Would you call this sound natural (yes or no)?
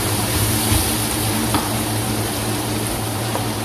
no